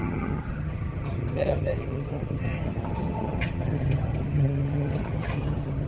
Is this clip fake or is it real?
fake